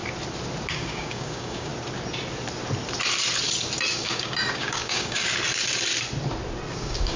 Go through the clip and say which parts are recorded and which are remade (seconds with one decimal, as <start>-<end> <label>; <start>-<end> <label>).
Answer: 0.0-0.7 recorded; 0.7-1.7 remade; 1.7-3.9 recorded; 3.9-5.3 remade; 5.3-6.7 recorded; 6.7-7.2 remade